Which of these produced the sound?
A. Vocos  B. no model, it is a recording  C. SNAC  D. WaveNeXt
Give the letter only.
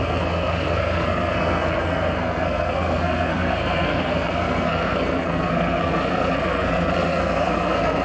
C